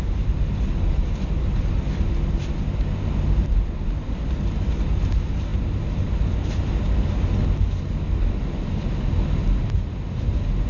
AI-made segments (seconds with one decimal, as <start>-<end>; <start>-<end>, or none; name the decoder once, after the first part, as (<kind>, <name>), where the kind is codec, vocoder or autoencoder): none